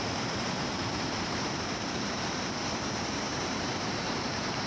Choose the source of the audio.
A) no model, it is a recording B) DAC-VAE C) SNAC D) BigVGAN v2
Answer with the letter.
D